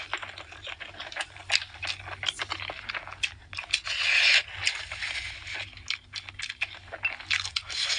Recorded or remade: recorded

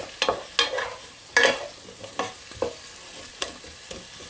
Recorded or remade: recorded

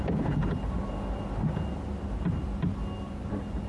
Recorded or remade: recorded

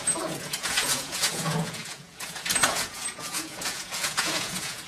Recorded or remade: remade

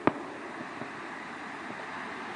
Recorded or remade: recorded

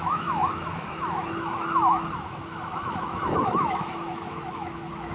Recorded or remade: remade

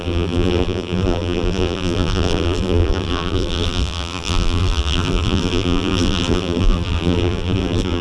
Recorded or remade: remade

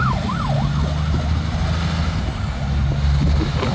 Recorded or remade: recorded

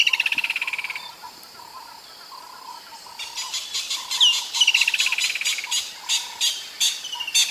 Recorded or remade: recorded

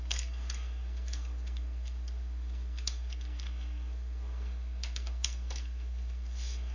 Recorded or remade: remade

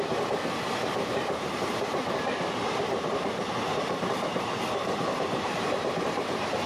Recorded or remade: remade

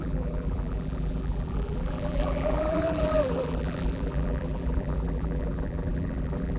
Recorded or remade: remade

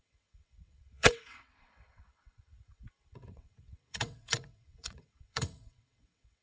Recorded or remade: remade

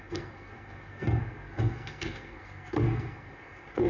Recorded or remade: remade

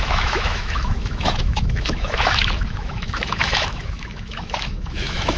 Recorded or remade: remade